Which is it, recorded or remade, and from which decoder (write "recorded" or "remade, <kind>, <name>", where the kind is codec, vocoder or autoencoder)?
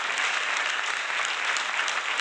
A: recorded